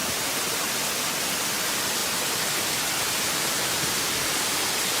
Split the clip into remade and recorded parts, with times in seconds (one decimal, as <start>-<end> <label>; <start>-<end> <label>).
0.0-5.0 recorded